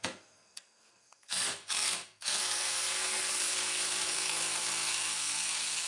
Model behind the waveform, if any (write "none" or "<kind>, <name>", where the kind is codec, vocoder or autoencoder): codec, SNAC